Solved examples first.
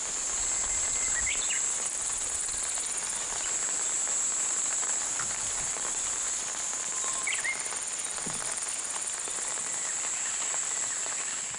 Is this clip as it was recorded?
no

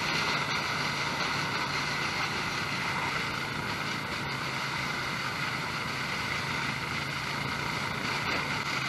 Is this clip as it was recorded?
yes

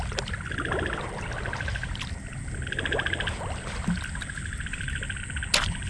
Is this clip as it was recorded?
yes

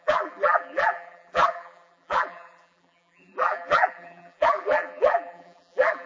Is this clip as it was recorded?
no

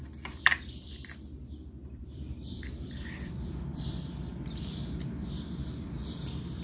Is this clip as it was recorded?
no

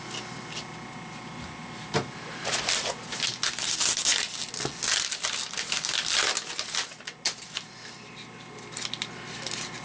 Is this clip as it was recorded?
yes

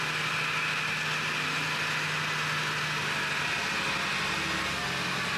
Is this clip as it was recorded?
yes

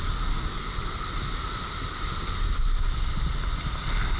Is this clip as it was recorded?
yes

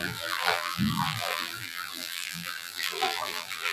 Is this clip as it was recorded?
no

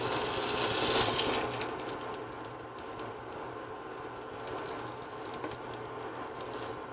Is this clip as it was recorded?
yes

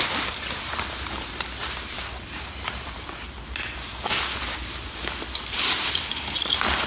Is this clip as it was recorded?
yes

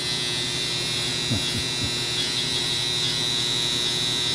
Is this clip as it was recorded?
yes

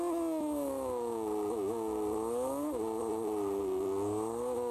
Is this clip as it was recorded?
yes